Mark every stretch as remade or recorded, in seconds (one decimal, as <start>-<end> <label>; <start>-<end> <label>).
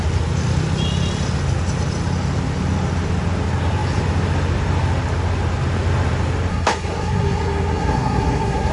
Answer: 0.0-6.5 recorded; 6.5-8.7 remade